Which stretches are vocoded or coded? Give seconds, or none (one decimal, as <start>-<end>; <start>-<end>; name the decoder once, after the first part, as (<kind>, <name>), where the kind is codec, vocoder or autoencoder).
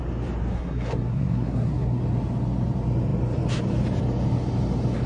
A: 0.5-2.0 (codec, SNAC)